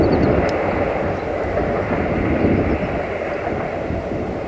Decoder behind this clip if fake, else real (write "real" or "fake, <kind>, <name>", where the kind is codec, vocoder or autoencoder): real